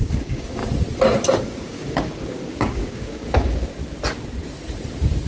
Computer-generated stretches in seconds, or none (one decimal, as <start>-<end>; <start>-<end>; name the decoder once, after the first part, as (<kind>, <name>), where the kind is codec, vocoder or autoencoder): 0.0-0.6 (codec, DAC); 1.4-3.7